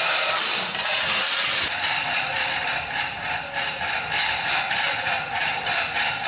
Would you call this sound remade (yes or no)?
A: yes